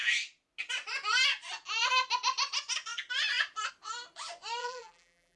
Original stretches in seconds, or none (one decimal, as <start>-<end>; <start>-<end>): 0.0-4.6